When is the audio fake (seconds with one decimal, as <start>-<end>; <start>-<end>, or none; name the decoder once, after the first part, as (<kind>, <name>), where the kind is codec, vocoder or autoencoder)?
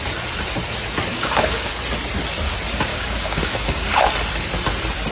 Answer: 1.1-1.7 (codec, DAC); 2.9-4.1